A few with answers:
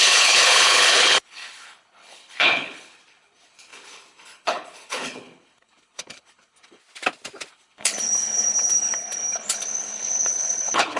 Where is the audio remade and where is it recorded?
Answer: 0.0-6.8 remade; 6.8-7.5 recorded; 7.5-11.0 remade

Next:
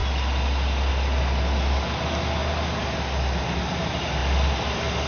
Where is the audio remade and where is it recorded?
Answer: 0.0-5.1 recorded

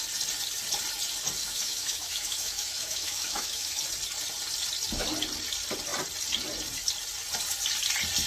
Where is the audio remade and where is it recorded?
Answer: 0.0-1.4 recorded; 1.4-3.8 remade; 3.8-8.3 recorded

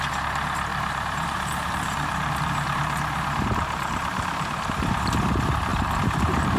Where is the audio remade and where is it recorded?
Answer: 0.0-0.7 recorded; 0.7-4.7 remade; 4.7-5.7 recorded; 5.7-6.6 remade

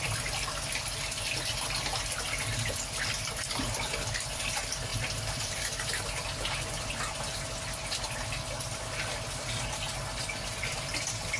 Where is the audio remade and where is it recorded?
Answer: 0.0-4.9 recorded; 4.9-6.9 remade; 6.9-11.4 recorded

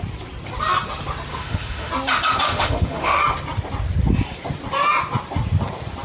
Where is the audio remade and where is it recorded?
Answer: 0.0-1.3 recorded; 1.3-1.9 remade; 1.9-2.4 recorded; 2.4-3.2 remade; 3.2-6.0 recorded

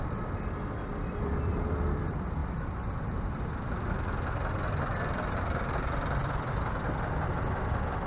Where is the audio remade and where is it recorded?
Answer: 0.0-8.1 recorded